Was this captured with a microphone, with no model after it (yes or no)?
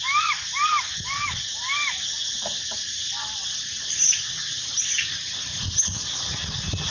yes